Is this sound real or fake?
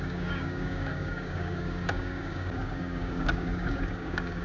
fake